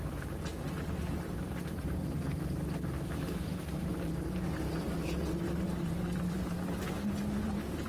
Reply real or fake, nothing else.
fake